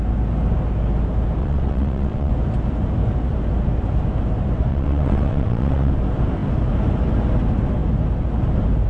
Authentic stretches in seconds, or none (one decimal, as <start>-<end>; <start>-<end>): 0.0-1.4; 2.3-4.7; 5.9-8.9